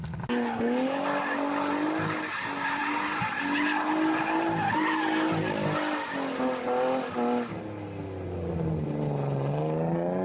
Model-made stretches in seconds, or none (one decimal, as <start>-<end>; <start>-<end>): none